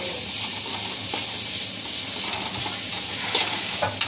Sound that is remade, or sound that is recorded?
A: recorded